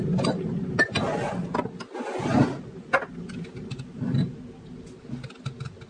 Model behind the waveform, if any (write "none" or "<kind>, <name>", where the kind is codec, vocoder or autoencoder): none